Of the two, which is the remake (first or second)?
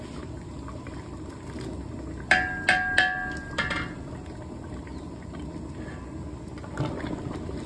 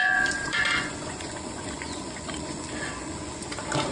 second